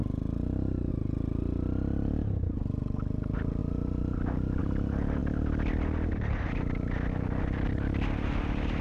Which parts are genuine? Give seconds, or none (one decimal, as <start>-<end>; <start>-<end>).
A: 0.0-8.8